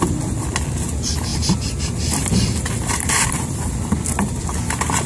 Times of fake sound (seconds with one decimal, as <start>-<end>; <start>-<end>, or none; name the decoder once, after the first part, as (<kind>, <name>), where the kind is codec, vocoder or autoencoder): 1.3-4.4 (vocoder, BigVGAN v2)